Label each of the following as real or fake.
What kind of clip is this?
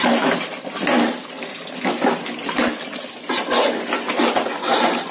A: real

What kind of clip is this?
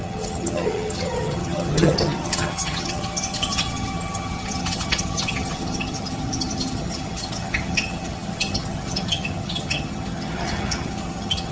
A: fake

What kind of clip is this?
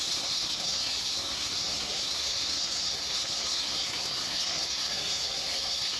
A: fake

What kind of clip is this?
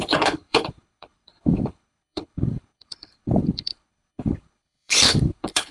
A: fake